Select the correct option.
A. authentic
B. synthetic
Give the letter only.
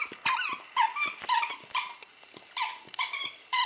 A